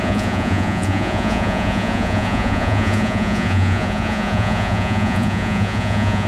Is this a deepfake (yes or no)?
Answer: yes